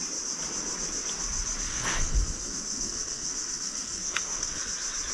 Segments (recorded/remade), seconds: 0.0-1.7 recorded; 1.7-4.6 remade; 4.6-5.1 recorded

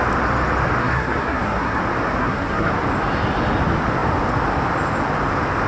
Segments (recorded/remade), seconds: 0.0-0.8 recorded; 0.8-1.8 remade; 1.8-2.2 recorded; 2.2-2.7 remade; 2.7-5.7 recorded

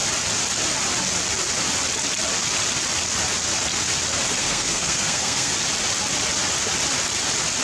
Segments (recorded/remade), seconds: 0.0-4.4 recorded; 4.4-5.5 remade; 5.5-7.6 recorded

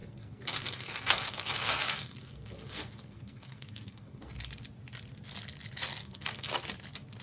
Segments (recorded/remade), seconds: 0.0-4.3 remade; 4.3-6.0 recorded; 6.0-6.5 remade; 6.5-7.2 recorded

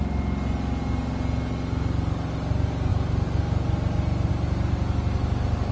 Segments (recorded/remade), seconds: 0.0-5.7 recorded